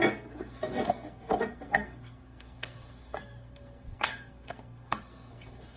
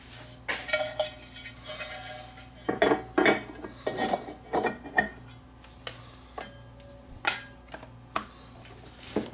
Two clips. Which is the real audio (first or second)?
second